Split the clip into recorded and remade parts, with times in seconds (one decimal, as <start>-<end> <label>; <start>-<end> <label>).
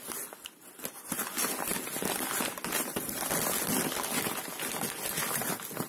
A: 0.0-5.9 recorded